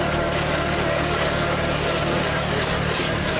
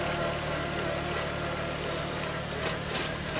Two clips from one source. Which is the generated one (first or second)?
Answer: first